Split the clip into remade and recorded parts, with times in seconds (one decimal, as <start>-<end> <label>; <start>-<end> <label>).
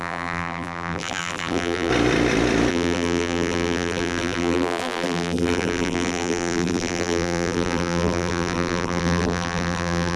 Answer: 0.0-1.9 remade; 1.9-2.7 recorded; 2.7-10.2 remade